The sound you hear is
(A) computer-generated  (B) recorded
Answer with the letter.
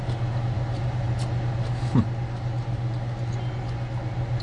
B